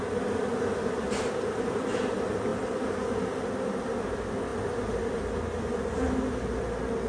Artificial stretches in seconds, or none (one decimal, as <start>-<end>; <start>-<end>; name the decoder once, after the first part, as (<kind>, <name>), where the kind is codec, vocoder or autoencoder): none